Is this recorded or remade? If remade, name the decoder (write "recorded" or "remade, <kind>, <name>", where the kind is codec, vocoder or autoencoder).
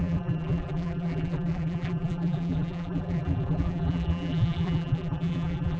remade, vocoder, BigVGAN v2